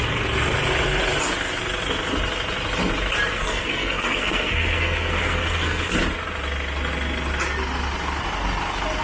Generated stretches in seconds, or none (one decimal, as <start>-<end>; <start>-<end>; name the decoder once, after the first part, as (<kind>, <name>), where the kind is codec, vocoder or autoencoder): 3.3-5.9 (codec, SNAC)